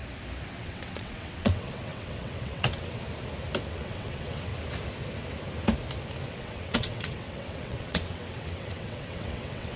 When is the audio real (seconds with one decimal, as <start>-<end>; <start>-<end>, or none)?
0.0-0.5; 3.0-3.7; 4.5-6.3